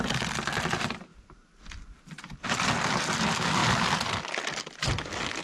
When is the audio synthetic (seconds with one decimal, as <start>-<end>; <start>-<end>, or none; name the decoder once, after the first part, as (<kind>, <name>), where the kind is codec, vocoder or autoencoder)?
none